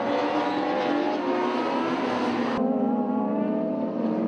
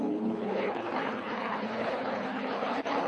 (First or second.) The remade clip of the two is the second